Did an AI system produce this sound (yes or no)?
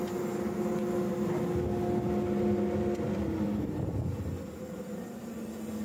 no